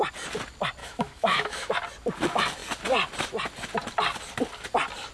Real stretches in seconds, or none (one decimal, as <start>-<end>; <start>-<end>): 0.0-0.8; 1.7-5.1